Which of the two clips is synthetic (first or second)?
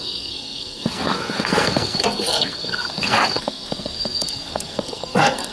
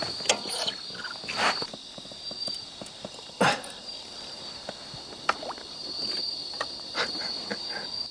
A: first